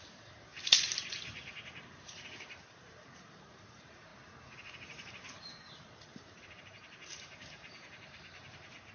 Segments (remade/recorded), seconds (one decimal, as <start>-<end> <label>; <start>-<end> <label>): 0.0-8.9 remade